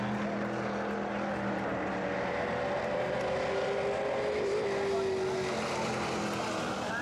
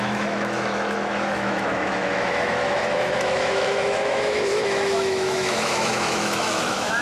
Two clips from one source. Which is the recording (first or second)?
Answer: first